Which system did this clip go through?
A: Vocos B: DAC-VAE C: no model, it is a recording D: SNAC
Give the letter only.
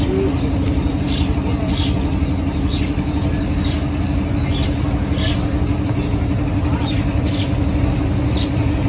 C